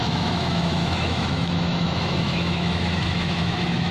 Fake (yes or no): yes